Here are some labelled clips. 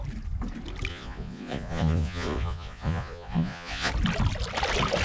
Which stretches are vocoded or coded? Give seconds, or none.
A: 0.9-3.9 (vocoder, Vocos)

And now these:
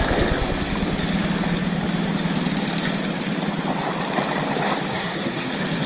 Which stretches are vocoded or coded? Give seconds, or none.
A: 4.9-5.5 (codec, SNAC)

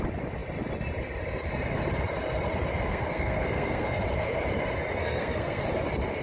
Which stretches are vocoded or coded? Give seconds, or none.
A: 2.9-4.0 (codec, SNAC); 5.0-5.6

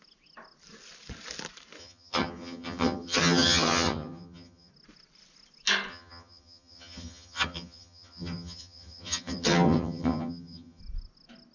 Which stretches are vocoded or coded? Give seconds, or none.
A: 1.8-4.7 (vocoder, HiFi-GAN); 5.9-10.8

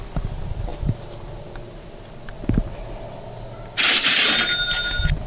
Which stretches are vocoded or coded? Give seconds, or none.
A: none

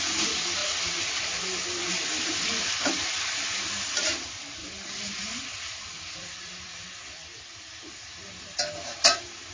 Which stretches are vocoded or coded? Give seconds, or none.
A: 4.6-8.1 (vocoder, BigVGAN v2)

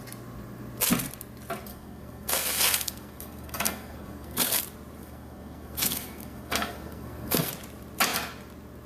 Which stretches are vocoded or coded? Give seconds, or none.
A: 1.7-4.6 (codec, SNAC); 5.0-7.5

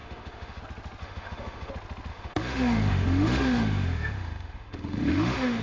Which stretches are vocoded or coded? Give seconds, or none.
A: 0.0-0.6 (autoencoder, DAC-VAE); 1.0-1.7; 2.1-5.6